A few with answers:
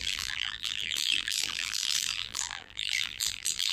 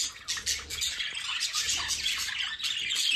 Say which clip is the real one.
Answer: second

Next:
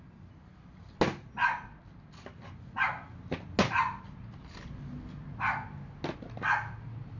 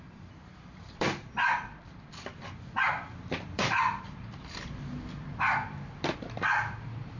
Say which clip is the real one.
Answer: first